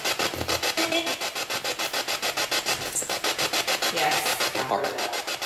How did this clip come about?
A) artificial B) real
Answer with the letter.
B